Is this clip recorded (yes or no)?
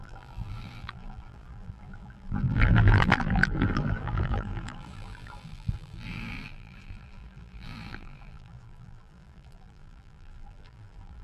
no